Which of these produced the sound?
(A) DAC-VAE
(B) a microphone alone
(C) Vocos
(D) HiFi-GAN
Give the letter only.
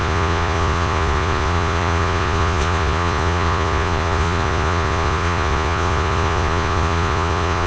C